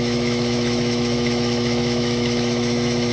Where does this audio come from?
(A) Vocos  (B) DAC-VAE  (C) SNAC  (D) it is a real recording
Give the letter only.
B